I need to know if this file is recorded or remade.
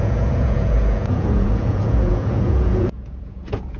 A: remade